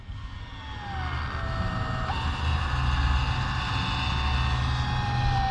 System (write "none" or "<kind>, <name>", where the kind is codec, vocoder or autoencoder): none